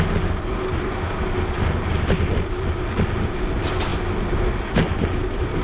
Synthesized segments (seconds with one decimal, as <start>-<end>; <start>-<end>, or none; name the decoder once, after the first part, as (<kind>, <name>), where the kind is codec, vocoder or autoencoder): none